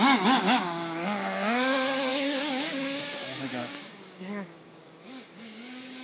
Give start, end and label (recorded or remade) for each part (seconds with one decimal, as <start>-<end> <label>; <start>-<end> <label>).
0.0-6.0 remade